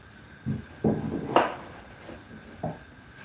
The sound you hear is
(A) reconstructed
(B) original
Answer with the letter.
B